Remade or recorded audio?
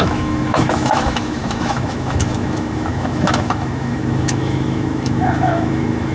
remade